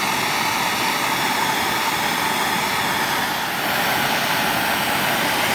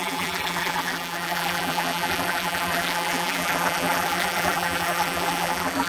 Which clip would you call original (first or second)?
first